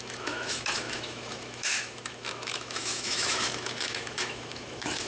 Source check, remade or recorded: remade